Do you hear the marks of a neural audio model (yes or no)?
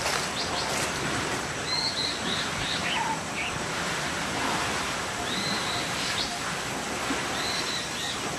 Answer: no